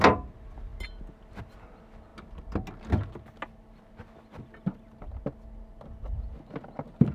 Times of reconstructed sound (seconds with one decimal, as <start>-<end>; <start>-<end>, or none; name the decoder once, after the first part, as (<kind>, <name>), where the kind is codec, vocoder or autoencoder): none